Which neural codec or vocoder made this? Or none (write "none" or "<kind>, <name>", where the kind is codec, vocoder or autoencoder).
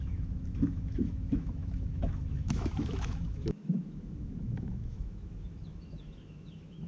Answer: autoencoder, DAC-VAE